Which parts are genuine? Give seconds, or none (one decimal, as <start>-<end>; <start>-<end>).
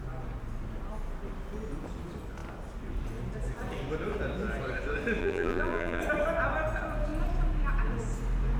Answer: 0.0-5.2; 6.0-8.6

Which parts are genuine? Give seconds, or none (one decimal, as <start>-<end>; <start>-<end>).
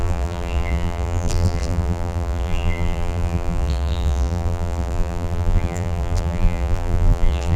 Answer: none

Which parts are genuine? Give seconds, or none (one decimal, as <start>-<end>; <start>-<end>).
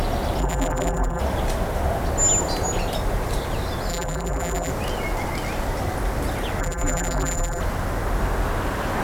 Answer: 0.0-0.4; 1.2-3.9; 4.7-6.6; 7.6-9.0